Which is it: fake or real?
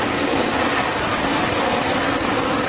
real